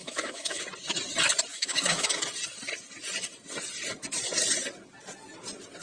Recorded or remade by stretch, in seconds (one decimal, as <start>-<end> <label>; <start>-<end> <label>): 0.0-0.6 remade; 0.6-1.5 recorded; 1.5-2.2 remade; 2.2-5.8 recorded